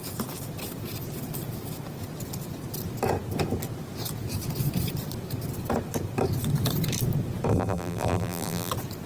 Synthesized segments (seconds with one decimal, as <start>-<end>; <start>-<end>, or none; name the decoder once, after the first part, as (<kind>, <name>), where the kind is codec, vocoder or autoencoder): 7.5-8.7 (vocoder, BigVGAN v2)

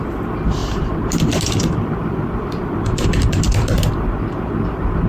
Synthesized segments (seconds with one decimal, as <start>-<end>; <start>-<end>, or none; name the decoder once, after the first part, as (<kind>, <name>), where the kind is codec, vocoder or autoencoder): 0.6-3.5 (vocoder, BigVGAN v2)

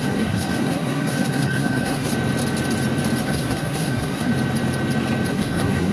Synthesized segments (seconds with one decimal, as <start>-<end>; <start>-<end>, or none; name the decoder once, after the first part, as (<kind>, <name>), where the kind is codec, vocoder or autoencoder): 0.0-2.1 (codec, SNAC); 3.2-4.3; 5.3-5.9

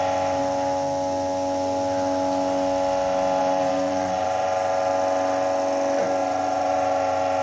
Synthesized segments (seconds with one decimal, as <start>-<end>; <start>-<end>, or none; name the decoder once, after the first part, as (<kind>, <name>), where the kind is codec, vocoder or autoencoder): 3.4-4.9 (vocoder, BigVGAN v2); 6.2-7.4

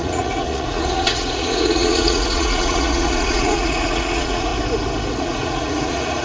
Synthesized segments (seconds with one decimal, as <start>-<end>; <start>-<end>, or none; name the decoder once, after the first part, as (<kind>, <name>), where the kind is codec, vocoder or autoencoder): 0.0-4.5 (vocoder, Vocos); 5.2-6.2

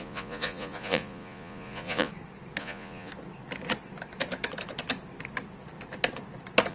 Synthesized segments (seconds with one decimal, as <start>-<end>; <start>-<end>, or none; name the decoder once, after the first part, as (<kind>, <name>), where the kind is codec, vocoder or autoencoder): 0.0-2.1 (vocoder, Vocos); 2.6-3.1